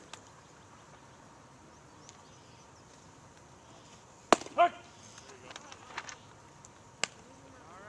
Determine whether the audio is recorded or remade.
recorded